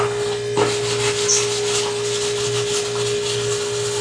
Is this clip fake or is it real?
real